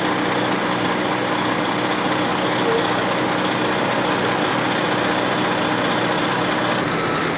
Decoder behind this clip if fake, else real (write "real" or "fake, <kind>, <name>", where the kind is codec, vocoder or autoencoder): real